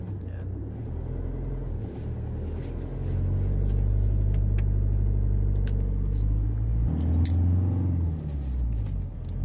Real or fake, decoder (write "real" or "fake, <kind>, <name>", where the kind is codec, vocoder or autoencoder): real